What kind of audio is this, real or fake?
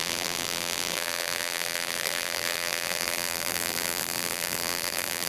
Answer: fake